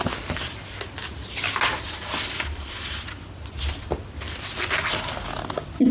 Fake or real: real